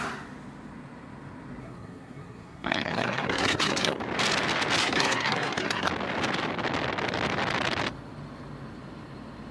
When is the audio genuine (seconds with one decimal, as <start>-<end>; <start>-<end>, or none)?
0.0-1.6; 4.0-4.8; 5.9-9.5